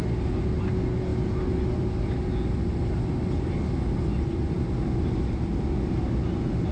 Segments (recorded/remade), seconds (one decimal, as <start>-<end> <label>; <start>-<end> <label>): 0.0-6.7 recorded